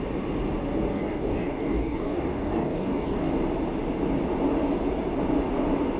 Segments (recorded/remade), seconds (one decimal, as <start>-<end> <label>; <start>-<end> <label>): 0.0-0.9 recorded; 0.9-3.3 remade; 3.3-6.0 recorded